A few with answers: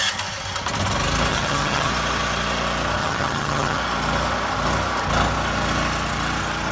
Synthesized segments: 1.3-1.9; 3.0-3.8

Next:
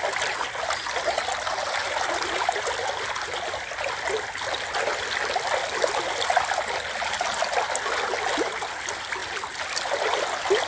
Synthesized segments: none

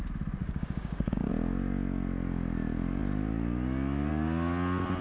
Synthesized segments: 0.4-1.3

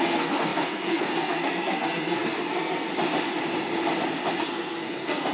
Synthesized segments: 0.0-2.9; 4.4-5.3

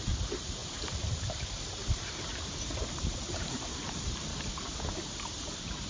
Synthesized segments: 0.0-4.3; 4.8-5.9